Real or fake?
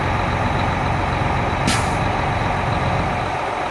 real